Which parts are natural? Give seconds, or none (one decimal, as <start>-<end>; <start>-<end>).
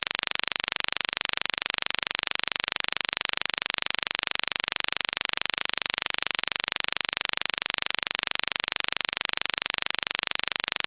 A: 0.0-5.6; 6.4-10.9